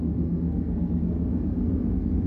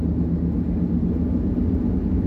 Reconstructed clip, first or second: first